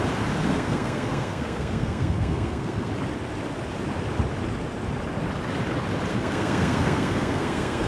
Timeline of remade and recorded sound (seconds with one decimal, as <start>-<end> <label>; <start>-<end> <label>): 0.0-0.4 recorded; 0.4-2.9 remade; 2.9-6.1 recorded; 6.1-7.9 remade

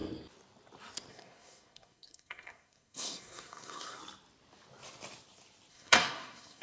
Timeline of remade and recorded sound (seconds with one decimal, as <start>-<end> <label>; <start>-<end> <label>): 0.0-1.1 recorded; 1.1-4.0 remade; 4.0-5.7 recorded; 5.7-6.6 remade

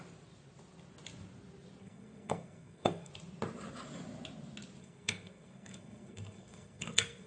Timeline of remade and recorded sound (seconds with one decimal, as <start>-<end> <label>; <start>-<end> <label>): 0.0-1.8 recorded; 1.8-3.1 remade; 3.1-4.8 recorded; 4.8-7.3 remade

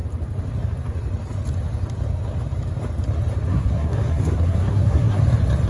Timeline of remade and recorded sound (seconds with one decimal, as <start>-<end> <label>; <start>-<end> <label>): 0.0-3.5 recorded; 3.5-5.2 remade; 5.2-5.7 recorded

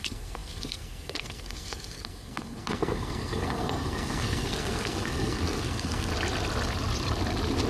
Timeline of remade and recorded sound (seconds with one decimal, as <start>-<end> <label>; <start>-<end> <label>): 0.0-6.1 remade; 6.1-7.7 recorded

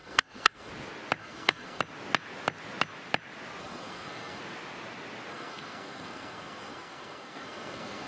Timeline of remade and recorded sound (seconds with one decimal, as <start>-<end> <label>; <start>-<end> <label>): 0.0-0.7 remade; 0.7-1.2 recorded; 1.2-1.8 remade; 1.8-3.6 recorded; 3.6-4.4 remade; 4.4-5.3 recorded; 5.3-8.1 remade

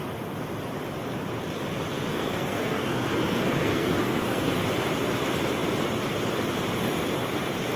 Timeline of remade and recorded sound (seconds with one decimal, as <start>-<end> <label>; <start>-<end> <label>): 0.0-2.1 recorded; 2.1-4.6 remade; 4.6-7.8 recorded

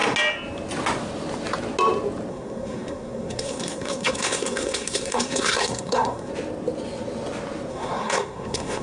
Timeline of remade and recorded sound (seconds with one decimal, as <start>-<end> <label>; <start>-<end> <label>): 0.0-2.3 recorded; 2.3-6.3 remade; 6.3-7.7 recorded; 7.7-8.8 remade